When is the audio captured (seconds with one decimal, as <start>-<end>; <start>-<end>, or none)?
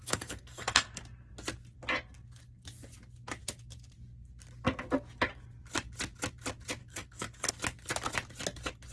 1.0-6.8; 7.5-8.9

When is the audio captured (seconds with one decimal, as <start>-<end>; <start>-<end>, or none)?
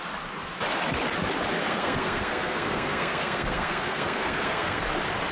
0.0-1.6; 4.8-5.3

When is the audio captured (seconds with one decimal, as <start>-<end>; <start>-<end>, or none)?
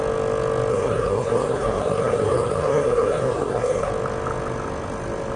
0.0-0.7; 3.9-5.4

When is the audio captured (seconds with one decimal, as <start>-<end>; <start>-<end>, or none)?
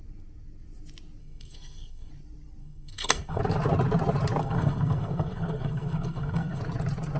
0.0-1.2; 2.1-2.6; 3.4-4.4; 6.6-7.2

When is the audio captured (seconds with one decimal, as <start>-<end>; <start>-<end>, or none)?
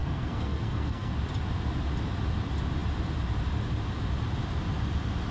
1.1-5.3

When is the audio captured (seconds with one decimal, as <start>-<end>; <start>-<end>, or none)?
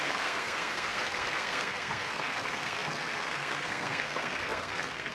none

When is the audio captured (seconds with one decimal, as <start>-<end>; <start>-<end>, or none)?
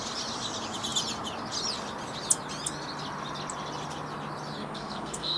0.0-4.6